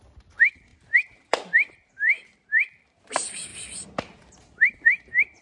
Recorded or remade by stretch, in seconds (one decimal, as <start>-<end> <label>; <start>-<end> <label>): 0.0-3.5 remade; 3.5-4.3 recorded; 4.3-5.4 remade